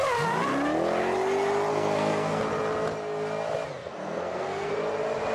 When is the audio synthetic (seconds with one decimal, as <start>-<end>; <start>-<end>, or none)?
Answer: 1.7-2.4; 3.8-4.7